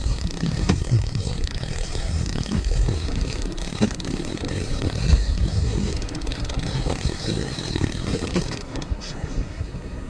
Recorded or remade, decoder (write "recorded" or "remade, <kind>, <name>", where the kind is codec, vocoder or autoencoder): remade, codec, SNAC